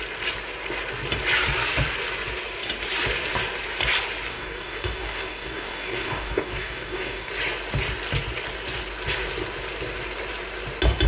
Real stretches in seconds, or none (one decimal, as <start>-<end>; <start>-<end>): 0.0-4.3; 7.3-11.1